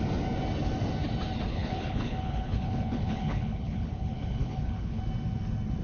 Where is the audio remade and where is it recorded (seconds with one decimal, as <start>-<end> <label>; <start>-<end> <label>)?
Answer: 0.0-1.5 recorded; 1.5-5.0 remade; 5.0-5.8 recorded